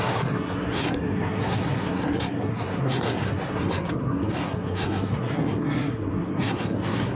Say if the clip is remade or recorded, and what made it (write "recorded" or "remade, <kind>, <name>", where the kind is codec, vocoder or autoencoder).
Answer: remade, codec, SNAC